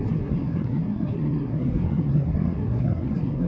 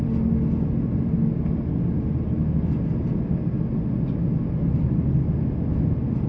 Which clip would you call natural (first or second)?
second